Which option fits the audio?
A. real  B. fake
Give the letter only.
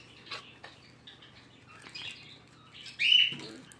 A